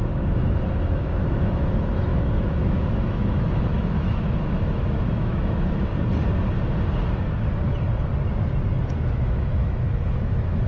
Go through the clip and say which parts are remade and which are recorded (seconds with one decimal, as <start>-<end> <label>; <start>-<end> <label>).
0.0-5.9 remade; 5.9-9.1 recorded; 9.1-10.7 remade